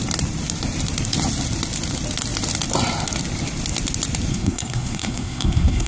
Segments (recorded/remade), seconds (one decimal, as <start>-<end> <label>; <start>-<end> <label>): 0.0-4.3 recorded; 4.3-5.9 remade